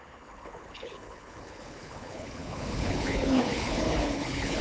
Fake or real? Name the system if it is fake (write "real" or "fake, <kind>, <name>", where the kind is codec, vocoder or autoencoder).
fake, codec, HILCodec